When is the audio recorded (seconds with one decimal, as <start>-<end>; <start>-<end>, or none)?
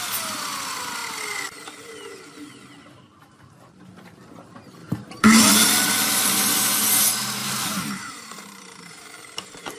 0.0-4.8; 5.4-7.4